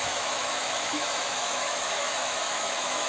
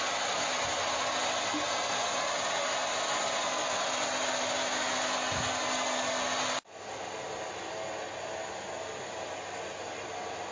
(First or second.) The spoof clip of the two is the first